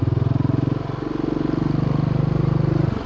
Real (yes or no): yes